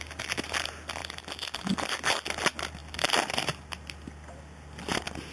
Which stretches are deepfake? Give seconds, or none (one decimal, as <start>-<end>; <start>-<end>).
none